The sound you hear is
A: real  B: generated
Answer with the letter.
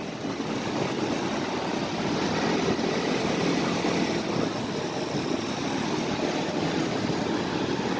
A